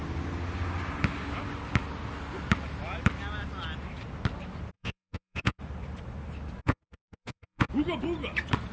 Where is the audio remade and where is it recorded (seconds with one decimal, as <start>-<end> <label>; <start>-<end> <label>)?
0.0-4.7 recorded; 4.7-5.6 remade; 5.6-6.6 recorded; 6.6-7.7 remade; 7.7-8.7 recorded